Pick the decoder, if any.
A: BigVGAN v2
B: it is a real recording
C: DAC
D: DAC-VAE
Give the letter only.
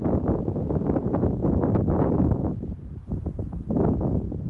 B